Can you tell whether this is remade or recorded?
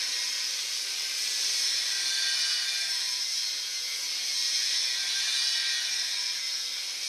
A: recorded